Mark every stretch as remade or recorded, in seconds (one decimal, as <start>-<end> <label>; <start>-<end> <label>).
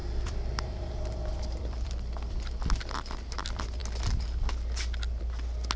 0.0-1.9 remade; 1.9-5.8 recorded